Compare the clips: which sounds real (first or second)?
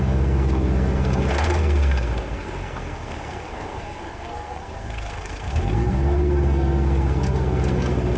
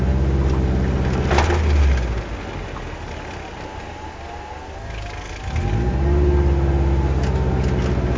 second